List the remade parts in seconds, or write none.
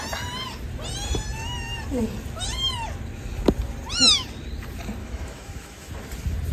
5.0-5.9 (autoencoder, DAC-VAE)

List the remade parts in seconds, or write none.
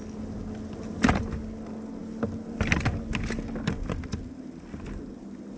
none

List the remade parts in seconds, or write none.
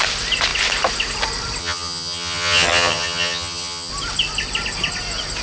1.6-3.9 (vocoder, HiFi-GAN)